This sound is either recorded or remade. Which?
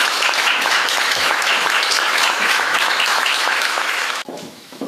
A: remade